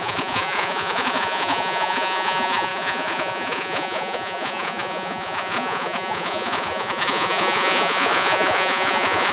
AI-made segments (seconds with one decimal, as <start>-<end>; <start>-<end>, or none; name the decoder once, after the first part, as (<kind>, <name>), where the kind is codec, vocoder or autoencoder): 0.0-9.3 (vocoder, Vocos)